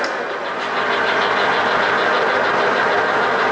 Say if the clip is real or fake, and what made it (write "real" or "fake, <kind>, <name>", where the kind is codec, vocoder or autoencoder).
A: real